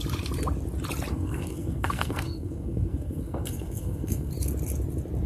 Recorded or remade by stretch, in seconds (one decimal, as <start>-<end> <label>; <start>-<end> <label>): 0.0-1.1 recorded; 1.1-4.3 remade; 4.3-5.3 recorded